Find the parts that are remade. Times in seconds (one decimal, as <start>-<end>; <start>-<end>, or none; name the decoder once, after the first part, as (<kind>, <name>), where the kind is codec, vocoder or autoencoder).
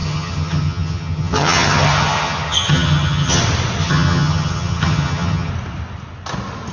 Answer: 0.0-3.4 (vocoder, HiFi-GAN); 3.8-5.5